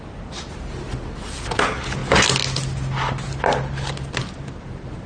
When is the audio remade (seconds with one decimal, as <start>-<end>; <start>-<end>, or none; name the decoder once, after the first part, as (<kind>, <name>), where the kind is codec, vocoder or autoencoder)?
none